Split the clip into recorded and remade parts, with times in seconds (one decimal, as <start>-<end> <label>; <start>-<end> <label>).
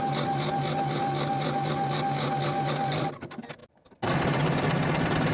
0.0-5.3 recorded